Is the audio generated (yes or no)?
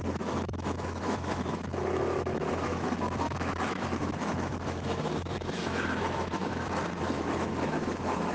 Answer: yes